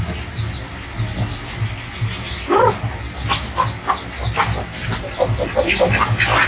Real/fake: real